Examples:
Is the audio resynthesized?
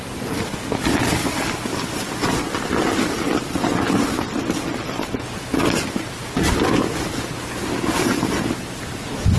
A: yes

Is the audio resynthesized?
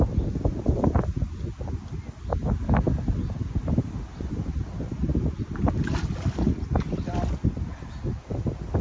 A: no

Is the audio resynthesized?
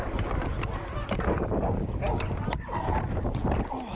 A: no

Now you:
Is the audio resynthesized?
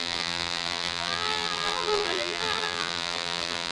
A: yes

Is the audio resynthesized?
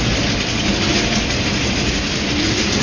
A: no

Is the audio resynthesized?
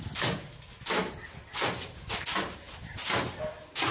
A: no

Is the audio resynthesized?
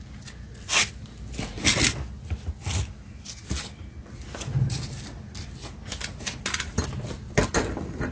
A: no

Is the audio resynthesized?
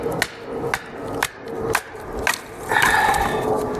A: no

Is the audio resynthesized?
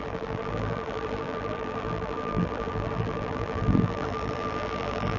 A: yes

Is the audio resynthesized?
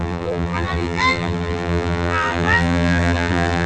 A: yes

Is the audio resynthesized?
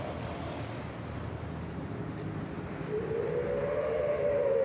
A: yes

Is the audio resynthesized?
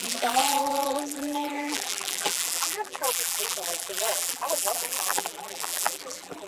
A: yes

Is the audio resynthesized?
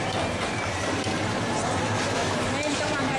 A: no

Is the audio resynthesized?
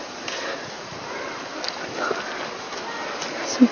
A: no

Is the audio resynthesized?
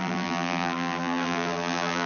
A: yes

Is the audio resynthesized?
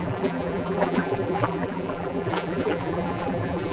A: yes